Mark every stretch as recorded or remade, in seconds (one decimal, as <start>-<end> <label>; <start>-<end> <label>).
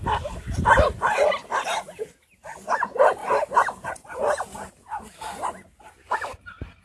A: 0.0-3.2 recorded; 3.2-3.9 remade; 3.9-6.8 recorded